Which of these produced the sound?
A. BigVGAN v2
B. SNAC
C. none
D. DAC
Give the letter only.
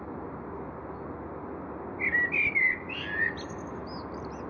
C